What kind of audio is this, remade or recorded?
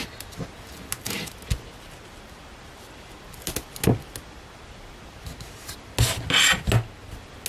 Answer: recorded